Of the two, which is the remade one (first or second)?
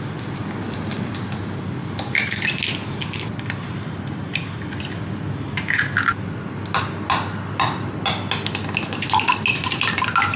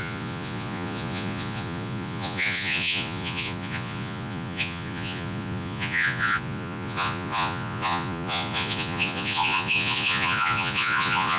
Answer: second